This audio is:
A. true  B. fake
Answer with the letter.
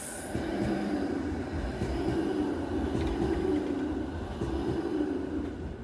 A